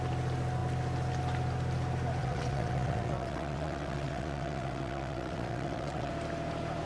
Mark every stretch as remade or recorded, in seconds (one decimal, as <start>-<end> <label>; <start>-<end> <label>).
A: 0.0-2.2 recorded; 2.2-6.1 remade; 6.1-6.9 recorded